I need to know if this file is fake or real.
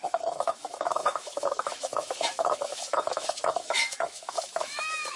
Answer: fake